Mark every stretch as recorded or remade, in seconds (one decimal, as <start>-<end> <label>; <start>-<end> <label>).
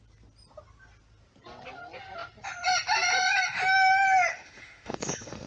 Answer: 0.0-4.3 recorded; 4.3-5.5 remade